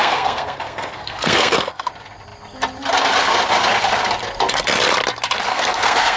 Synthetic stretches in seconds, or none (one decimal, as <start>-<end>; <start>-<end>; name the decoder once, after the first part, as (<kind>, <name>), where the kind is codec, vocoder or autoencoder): 0.0-1.9 (codec, SNAC); 5.5-6.2